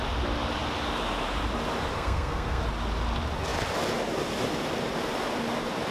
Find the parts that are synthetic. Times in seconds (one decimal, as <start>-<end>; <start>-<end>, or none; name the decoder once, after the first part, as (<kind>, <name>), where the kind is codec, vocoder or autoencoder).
1.9-2.6 (codec, SNAC)